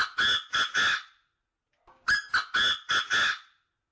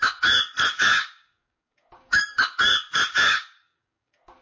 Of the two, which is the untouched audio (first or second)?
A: first